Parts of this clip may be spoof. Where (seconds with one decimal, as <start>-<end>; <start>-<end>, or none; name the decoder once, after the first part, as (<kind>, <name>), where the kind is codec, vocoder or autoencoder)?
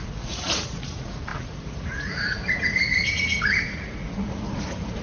0.0-5.0 (vocoder, Vocos)